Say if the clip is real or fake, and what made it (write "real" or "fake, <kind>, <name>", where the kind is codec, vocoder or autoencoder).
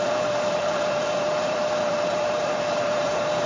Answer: fake, vocoder, BigVGAN v2